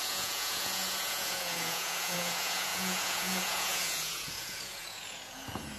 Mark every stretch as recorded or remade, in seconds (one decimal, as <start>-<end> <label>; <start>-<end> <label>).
0.0-5.8 remade